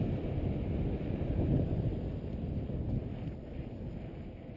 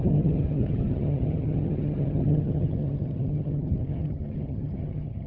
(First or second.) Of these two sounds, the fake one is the second